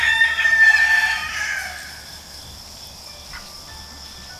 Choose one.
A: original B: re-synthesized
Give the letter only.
A